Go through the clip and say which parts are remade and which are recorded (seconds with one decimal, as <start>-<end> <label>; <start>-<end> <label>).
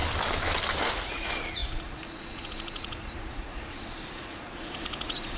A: 0.0-0.9 recorded; 0.9-5.4 remade